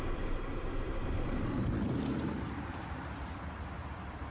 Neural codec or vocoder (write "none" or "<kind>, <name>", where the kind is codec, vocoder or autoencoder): vocoder, BigVGAN v2